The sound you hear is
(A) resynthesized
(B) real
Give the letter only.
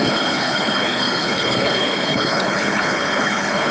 A